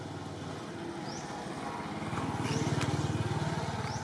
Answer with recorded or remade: recorded